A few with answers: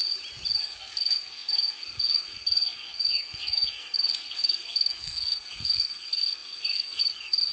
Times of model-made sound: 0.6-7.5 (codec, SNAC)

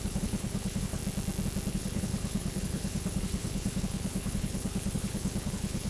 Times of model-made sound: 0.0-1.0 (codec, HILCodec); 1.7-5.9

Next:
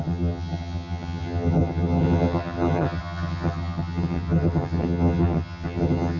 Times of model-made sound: 0.0-6.2 (vocoder, HiFi-GAN)

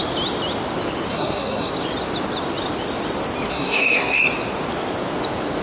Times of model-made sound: 1.1-1.7 (codec, SNAC); 3.5-4.2

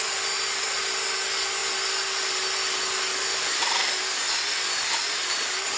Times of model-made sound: none

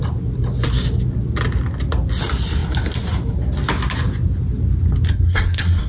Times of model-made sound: 5.1-5.9 (codec, SNAC)

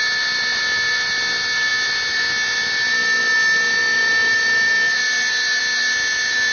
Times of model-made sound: none

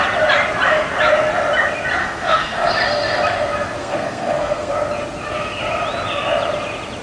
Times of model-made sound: 2.0-2.7 (codec, SNAC); 3.8-4.7